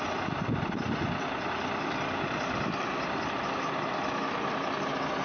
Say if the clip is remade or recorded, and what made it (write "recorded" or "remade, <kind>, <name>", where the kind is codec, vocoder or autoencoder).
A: recorded